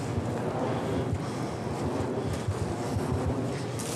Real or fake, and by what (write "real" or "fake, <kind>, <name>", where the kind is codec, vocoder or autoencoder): real